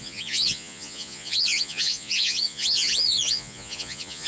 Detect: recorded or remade remade